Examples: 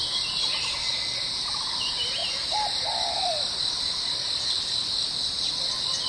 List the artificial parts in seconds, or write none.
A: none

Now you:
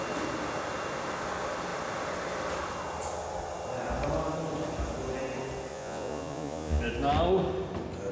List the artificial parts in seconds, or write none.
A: 5.7-6.8

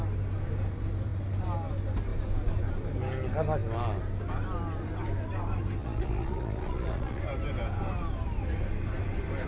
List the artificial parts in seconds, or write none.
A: 5.8-7.2

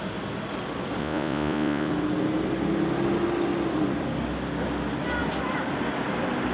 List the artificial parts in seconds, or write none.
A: 1.0-1.9

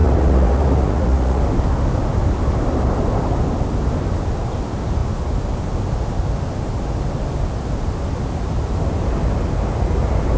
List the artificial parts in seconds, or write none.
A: 0.0-1.4

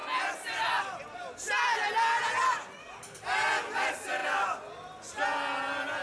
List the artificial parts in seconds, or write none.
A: none